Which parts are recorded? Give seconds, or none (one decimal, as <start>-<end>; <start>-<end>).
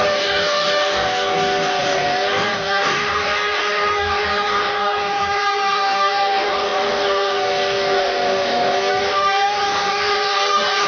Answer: none